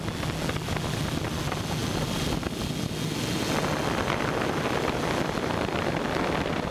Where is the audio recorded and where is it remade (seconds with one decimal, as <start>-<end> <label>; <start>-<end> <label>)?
0.0-6.7 recorded